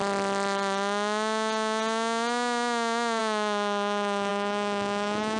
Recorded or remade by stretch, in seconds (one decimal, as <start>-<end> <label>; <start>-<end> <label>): 0.0-3.2 recorded; 3.2-5.4 remade